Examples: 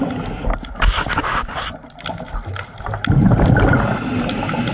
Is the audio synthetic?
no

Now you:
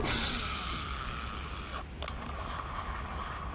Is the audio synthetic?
no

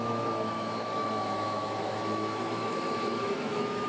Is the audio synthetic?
yes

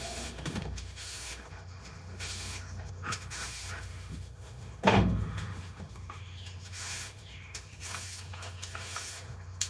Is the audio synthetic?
yes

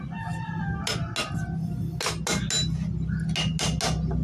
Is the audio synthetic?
no